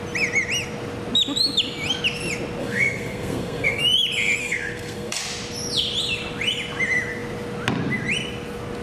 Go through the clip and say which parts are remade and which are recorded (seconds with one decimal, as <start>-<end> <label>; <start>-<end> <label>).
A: 0.0-2.6 recorded; 2.6-3.8 remade; 3.8-4.4 recorded; 4.4-5.2 remade; 5.2-8.8 recorded